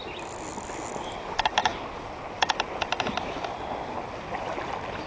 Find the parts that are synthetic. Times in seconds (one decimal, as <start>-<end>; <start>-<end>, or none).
none